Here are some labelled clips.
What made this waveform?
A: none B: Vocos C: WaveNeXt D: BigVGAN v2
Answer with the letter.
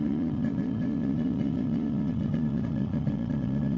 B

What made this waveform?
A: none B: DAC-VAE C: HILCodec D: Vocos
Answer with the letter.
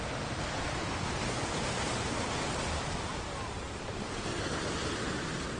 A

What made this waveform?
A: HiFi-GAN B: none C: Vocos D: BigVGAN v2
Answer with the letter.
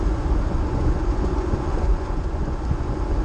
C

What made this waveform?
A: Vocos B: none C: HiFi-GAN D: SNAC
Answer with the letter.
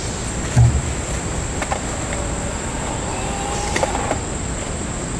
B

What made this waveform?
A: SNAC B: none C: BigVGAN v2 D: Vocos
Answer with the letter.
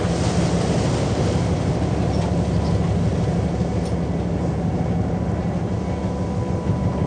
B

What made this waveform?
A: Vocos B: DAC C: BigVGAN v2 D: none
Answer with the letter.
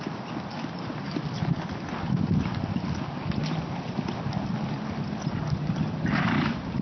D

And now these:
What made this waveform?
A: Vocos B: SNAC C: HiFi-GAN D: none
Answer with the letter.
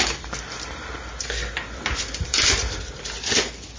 D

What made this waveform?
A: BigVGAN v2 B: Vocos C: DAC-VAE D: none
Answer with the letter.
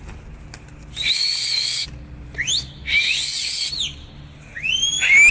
D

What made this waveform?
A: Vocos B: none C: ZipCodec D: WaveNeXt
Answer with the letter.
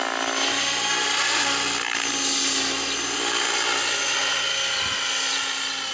B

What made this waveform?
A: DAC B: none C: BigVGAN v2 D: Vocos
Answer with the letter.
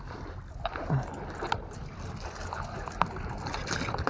B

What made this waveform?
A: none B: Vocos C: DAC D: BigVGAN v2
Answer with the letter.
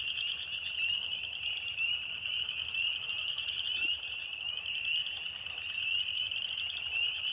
A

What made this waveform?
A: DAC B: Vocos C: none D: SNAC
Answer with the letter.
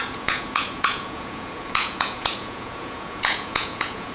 B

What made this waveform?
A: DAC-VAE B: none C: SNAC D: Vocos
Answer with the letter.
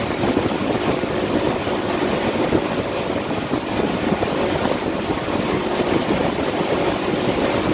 B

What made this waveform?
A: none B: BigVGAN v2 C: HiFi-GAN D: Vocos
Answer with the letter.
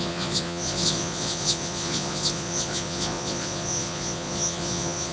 D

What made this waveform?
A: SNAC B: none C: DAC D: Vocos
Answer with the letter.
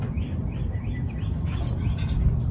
B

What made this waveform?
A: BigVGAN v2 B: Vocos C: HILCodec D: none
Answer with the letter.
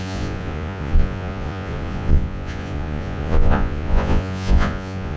B